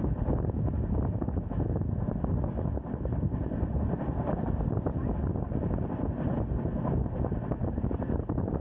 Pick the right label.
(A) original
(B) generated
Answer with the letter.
A